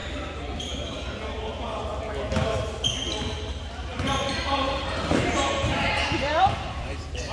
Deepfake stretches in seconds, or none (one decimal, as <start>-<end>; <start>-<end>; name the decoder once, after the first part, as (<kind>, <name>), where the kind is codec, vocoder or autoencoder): 3.9-7.3 (vocoder, BigVGAN v2)